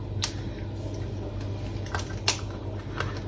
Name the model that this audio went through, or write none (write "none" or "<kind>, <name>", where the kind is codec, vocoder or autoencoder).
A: none